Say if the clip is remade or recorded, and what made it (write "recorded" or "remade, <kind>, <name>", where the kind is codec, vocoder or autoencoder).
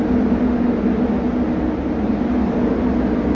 recorded